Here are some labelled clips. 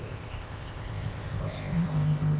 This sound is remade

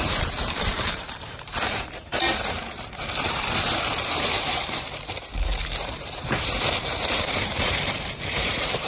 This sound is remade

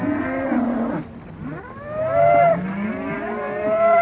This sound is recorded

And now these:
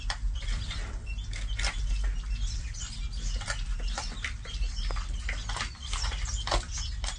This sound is recorded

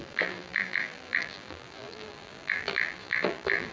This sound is remade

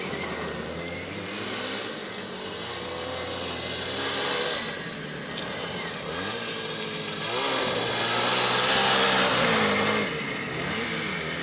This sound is recorded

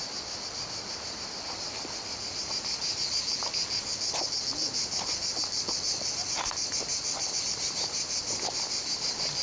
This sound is recorded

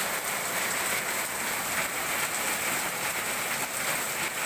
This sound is recorded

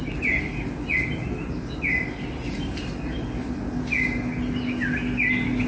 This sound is recorded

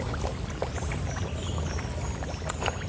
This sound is recorded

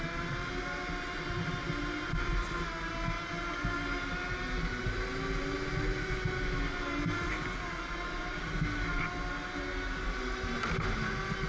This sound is recorded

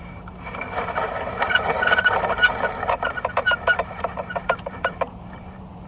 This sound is remade